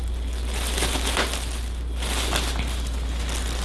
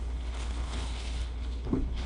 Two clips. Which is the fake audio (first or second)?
second